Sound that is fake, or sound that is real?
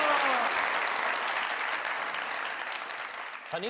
real